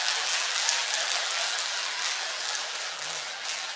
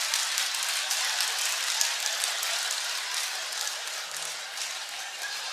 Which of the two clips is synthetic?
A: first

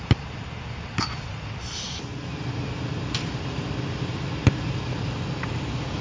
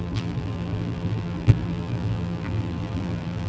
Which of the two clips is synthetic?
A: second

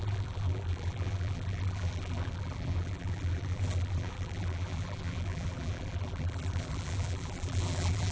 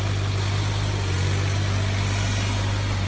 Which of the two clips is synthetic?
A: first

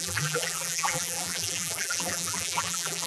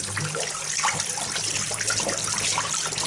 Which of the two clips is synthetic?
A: first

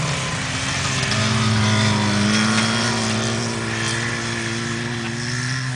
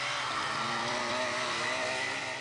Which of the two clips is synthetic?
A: second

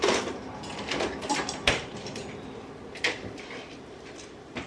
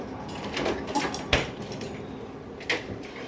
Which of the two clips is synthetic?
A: first